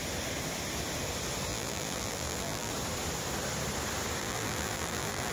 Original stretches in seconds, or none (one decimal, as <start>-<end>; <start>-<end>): 0.0-1.5; 2.7-4.2